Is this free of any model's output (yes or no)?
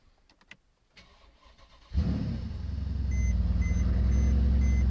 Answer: yes